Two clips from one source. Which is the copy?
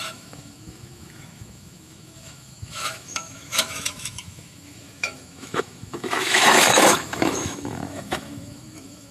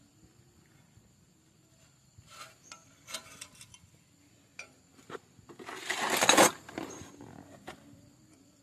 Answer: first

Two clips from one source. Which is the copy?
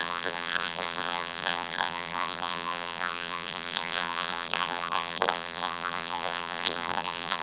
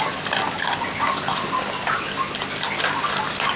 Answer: first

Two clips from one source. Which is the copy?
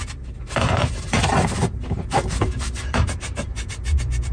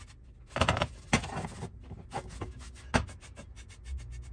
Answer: first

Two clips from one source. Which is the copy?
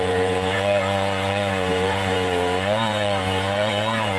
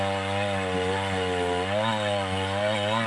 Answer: first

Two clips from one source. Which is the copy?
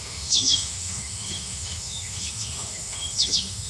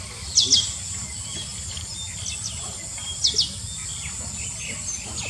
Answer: first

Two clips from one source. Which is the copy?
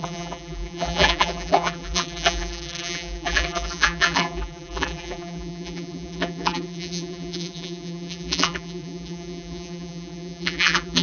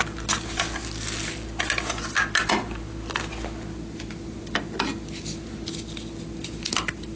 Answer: first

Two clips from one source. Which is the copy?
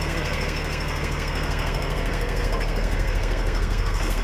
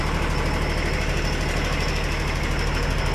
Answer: first